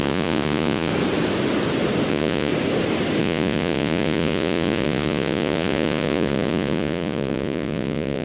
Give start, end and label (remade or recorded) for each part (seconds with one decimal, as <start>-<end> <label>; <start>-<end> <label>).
0.0-0.9 remade; 0.9-2.1 recorded; 2.1-2.5 remade; 2.5-3.2 recorded; 3.2-8.2 remade